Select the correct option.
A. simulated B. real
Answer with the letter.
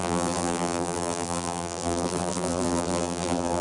A